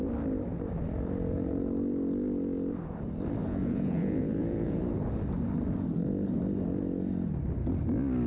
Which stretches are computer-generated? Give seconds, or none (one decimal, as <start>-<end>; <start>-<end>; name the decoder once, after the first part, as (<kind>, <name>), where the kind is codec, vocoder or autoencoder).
3.4-4.8 (vocoder, Vocos)